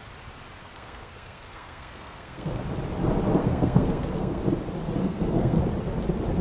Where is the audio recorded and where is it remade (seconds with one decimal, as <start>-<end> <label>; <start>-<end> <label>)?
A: 0.0-0.6 recorded; 0.6-2.6 remade; 2.6-3.4 recorded; 3.4-4.4 remade; 4.4-5.0 recorded; 5.0-5.6 remade; 5.6-6.4 recorded